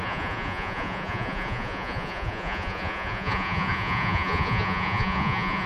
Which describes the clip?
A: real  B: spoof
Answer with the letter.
B